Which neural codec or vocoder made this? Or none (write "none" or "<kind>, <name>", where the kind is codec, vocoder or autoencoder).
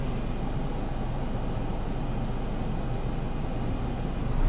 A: none